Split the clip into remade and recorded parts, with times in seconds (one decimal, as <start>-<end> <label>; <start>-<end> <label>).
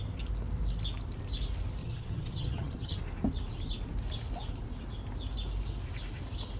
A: 0.0-1.8 recorded; 1.8-3.0 remade; 3.0-6.6 recorded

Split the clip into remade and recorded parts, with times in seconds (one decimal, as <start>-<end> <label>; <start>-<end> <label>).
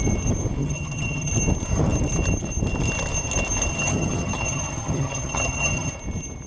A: 0.0-0.6 recorded; 0.6-1.3 remade; 1.3-3.7 recorded; 3.7-5.9 remade; 5.9-6.5 recorded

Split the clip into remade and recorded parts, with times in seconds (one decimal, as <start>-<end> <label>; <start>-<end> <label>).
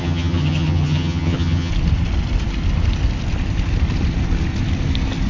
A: 0.0-1.7 remade; 1.7-5.3 recorded